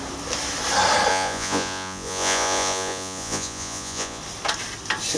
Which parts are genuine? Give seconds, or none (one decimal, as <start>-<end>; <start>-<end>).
0.0-1.1; 4.2-5.2